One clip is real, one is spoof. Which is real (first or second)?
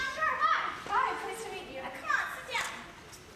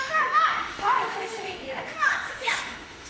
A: first